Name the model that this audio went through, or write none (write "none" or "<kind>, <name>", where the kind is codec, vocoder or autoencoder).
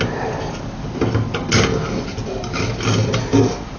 none